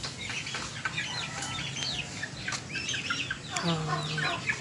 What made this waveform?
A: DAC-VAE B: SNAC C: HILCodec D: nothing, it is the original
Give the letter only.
D